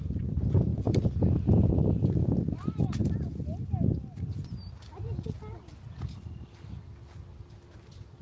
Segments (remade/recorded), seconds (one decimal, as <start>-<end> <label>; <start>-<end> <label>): 0.0-8.2 recorded

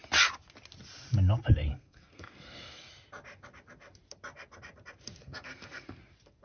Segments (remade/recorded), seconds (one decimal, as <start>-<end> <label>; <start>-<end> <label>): 0.0-1.7 recorded; 1.7-2.9 remade; 2.9-5.2 recorded; 5.2-6.0 remade; 6.0-6.4 recorded

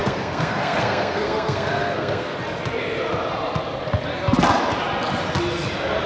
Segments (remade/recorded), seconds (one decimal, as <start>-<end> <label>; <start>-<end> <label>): 0.0-2.3 remade; 2.3-6.1 recorded

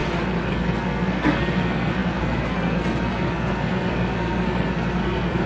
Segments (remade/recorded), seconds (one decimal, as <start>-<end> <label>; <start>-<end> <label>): 0.0-0.5 recorded; 0.5-5.5 remade

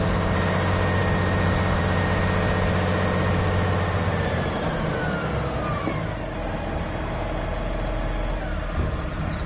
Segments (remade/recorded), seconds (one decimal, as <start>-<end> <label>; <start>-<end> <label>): 0.0-9.5 recorded

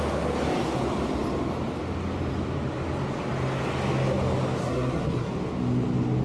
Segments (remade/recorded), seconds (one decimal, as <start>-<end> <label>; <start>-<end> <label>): 0.0-4.6 recorded; 4.6-5.3 remade; 5.3-6.2 recorded

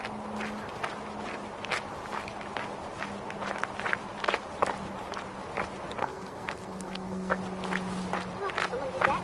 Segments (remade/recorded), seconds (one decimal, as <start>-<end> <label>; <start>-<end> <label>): 0.0-6.0 recorded; 6.0-7.4 remade; 7.4-9.2 recorded